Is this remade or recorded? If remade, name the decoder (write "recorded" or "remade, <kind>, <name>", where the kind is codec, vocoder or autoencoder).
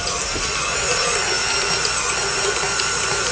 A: recorded